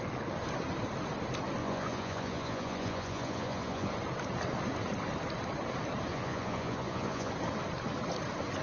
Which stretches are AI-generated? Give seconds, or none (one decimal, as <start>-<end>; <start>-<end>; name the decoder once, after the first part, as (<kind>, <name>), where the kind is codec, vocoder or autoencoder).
1.6-3.9 (vocoder, Vocos); 6.1-7.3